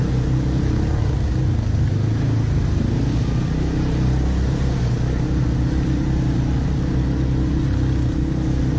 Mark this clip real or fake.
real